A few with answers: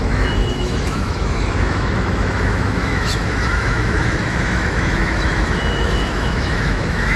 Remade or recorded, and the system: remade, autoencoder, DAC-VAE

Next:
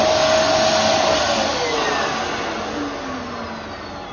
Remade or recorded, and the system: recorded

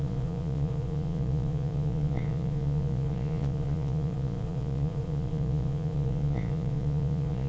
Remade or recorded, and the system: remade, vocoder, Vocos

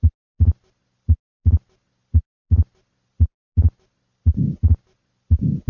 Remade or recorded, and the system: recorded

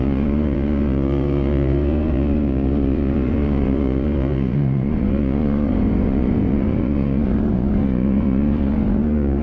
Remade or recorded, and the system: remade, vocoder, Vocos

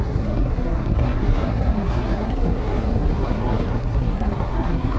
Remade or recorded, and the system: remade, codec, SNAC